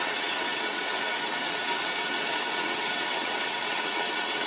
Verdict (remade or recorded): remade